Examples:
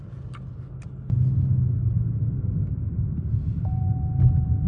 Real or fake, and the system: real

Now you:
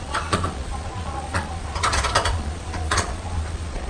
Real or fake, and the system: fake, vocoder, Vocos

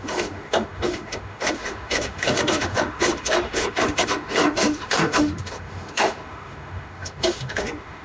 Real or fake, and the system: fake, autoencoder, DAC-VAE